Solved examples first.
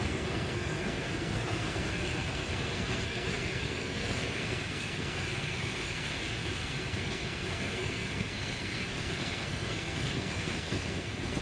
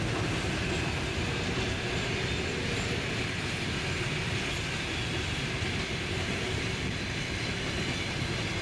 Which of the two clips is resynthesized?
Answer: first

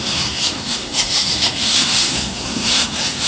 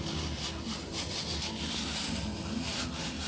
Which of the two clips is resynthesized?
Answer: first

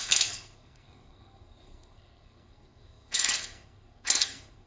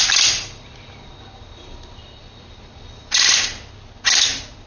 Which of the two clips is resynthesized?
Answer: first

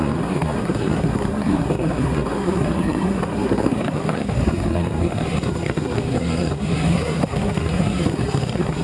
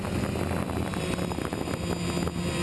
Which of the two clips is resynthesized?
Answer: first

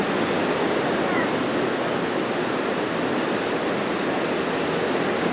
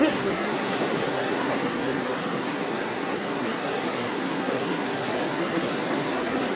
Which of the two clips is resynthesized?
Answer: second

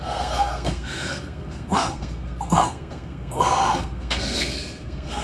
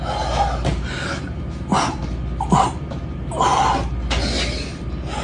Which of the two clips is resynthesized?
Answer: first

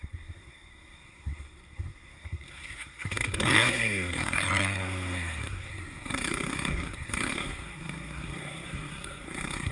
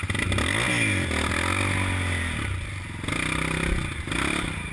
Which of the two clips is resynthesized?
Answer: first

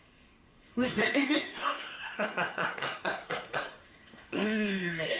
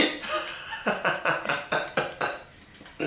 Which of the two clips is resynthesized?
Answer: first